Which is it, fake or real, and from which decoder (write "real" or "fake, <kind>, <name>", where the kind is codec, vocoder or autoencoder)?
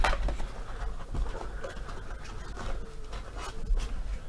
real